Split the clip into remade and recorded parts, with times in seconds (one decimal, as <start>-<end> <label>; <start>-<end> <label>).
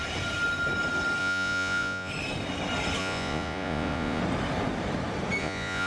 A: 0.0-1.2 recorded; 1.2-2.1 remade; 2.1-3.0 recorded; 3.0-4.2 remade; 4.2-5.4 recorded; 5.4-5.9 remade